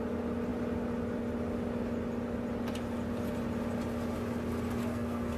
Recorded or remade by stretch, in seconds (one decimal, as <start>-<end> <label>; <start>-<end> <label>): 0.0-4.8 recorded; 4.8-5.4 remade